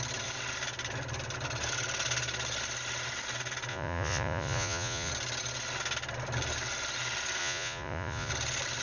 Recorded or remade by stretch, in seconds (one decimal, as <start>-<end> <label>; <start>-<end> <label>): 0.0-3.7 recorded; 3.7-5.1 remade; 5.1-7.4 recorded; 7.4-8.3 remade; 8.3-8.8 recorded